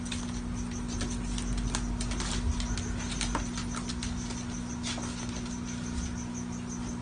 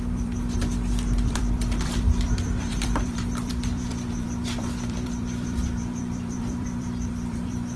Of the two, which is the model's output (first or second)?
second